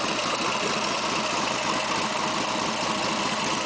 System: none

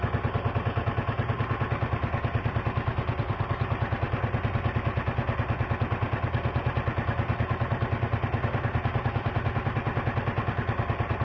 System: none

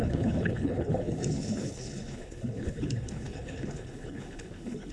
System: codec, HILCodec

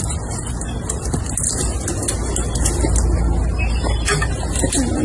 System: none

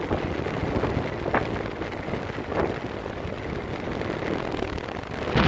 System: none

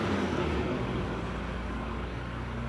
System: codec, DAC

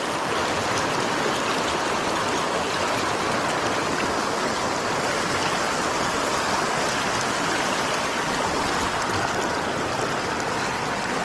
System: none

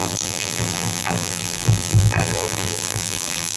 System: vocoder, BigVGAN v2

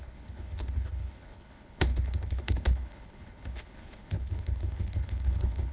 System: codec, HILCodec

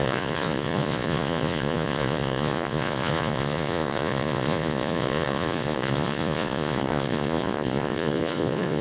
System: vocoder, Vocos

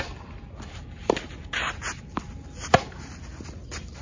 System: none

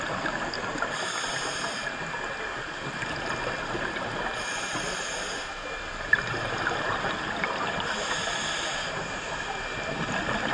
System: none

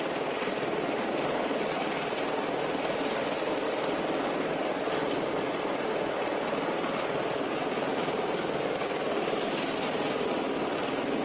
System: none